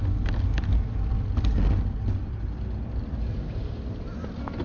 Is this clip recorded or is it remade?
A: recorded